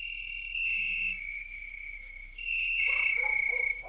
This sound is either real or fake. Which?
fake